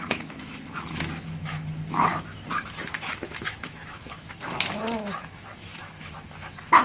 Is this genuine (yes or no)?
no